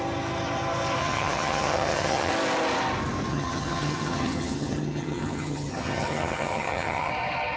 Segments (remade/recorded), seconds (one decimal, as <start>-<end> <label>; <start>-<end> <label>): 0.0-1.0 recorded; 1.0-2.3 remade; 2.3-3.3 recorded; 3.3-7.1 remade; 7.1-7.6 recorded